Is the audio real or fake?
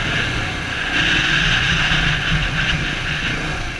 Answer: fake